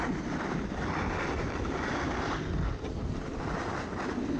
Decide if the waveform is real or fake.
real